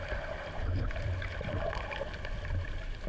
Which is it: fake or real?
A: fake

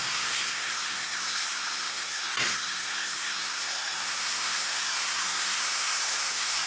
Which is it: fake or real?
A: fake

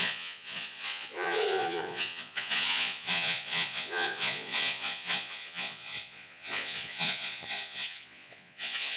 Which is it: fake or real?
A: fake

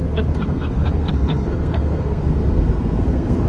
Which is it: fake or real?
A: fake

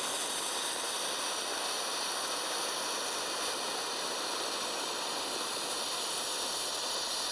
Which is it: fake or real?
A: real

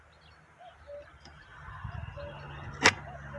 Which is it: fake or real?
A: real